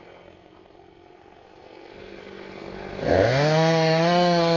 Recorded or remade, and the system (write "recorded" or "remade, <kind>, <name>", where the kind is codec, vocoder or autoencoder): remade, codec, SNAC